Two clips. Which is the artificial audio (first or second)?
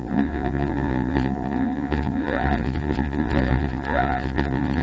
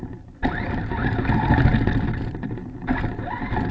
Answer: first